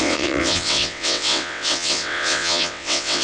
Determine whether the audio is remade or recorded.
remade